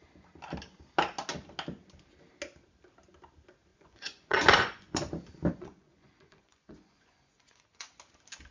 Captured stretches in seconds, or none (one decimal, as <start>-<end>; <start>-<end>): 0.0-3.7; 5.1-5.5; 7.9-8.5